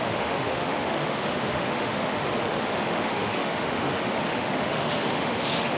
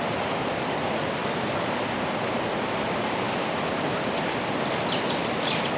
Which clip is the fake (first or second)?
first